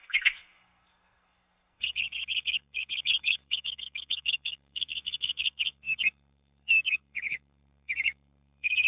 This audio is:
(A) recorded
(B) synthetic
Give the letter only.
B